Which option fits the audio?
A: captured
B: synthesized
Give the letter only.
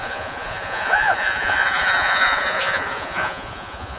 B